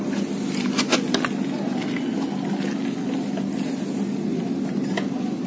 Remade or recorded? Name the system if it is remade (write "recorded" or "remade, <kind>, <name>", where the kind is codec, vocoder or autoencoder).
recorded